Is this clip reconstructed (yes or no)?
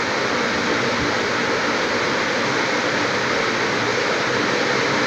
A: no